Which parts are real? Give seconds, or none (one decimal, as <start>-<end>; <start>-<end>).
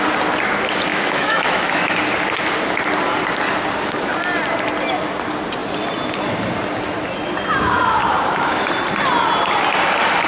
0.0-0.9; 2.0-8.0; 8.7-10.3